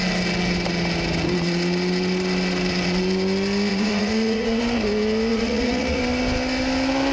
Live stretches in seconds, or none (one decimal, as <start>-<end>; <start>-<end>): 0.0-3.7; 4.6-5.3; 6.0-7.1